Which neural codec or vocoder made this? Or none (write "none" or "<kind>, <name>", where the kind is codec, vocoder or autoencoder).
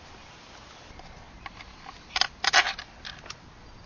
none